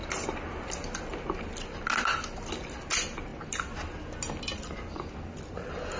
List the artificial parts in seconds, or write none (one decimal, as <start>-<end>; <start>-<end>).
none